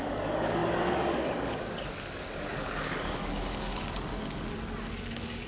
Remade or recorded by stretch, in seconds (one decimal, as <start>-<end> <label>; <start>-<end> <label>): 0.0-4.1 remade; 4.1-4.9 recorded; 4.9-5.5 remade